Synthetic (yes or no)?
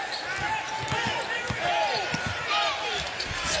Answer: no